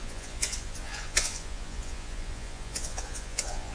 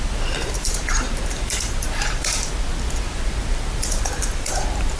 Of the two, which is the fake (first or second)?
first